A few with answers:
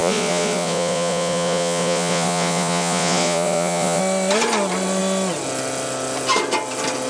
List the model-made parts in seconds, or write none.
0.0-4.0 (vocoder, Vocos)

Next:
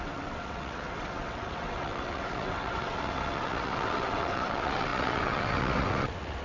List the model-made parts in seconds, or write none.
0.0-6.4 (vocoder, WaveNeXt)

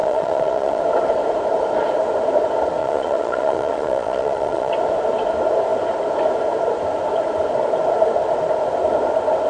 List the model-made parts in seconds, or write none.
0.0-0.8 (vocoder, Vocos); 2.8-4.7

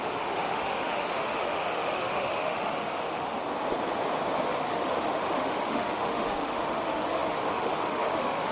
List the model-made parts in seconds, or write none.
0.0-3.4 (autoencoder, DAC-VAE); 4.6-8.5

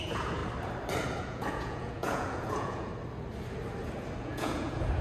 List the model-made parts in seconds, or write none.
0.0-0.4 (vocoder, Vocos); 1.2-2.9; 4.2-5.0

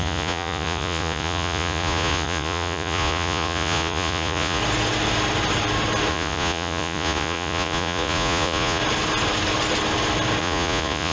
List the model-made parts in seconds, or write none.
0.0-4.6 (vocoder, Vocos); 6.1-8.8; 10.4-11.1